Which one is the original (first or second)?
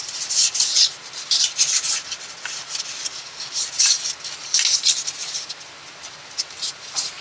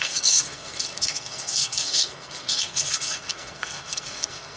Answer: first